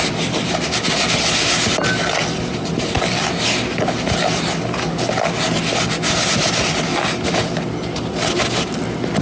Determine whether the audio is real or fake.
real